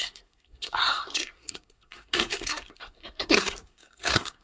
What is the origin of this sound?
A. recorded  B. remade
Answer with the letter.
B